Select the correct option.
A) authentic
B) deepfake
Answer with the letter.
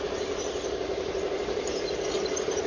A